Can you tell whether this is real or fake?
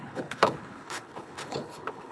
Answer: fake